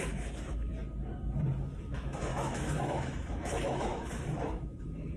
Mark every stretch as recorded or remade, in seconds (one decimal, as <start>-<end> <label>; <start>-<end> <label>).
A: 0.0-0.7 remade; 0.7-1.8 recorded; 1.8-5.2 remade